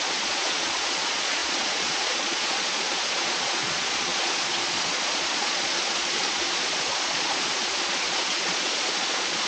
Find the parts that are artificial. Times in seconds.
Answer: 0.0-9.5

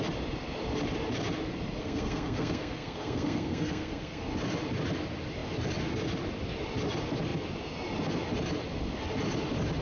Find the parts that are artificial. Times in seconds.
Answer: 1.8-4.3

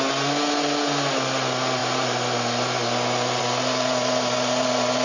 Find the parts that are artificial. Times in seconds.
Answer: none

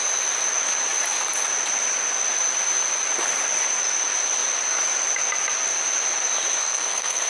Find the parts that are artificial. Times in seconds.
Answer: 6.6-7.3

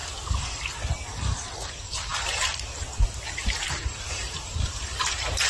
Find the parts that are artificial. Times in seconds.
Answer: 1.7-5.5

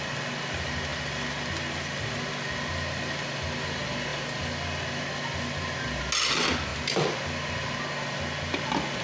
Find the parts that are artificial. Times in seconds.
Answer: none